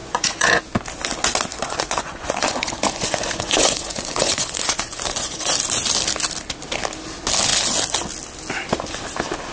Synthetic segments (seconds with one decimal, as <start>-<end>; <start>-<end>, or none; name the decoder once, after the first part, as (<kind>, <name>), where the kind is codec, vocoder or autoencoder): 0.0-0.6 (vocoder, Vocos); 1.5-5.5